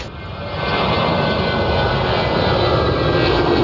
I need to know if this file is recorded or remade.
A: recorded